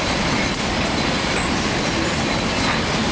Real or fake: real